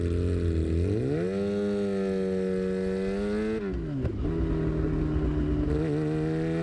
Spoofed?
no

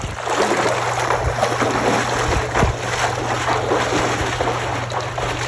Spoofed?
no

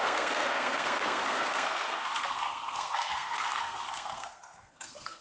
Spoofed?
yes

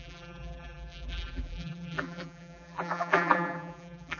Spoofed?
yes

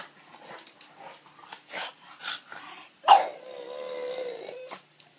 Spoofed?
no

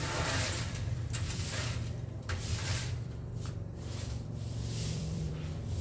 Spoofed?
yes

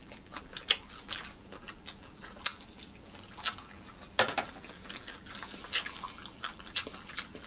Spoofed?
yes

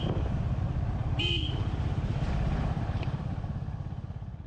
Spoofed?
yes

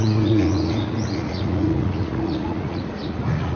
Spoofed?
yes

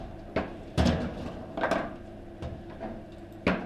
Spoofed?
no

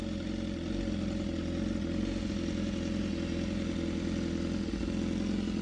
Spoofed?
no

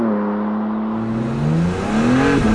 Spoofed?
no